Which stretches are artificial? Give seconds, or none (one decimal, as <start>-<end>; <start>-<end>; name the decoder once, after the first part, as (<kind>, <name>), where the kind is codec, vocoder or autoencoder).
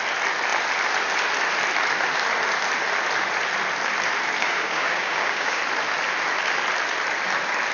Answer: 4.4-5.6 (codec, DAC)